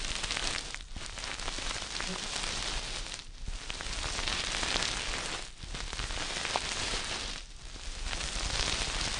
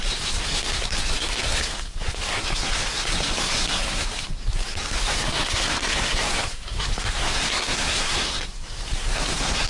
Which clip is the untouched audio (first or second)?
first